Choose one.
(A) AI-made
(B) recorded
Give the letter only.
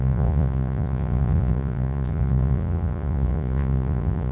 A